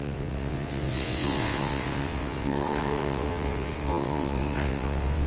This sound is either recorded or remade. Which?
remade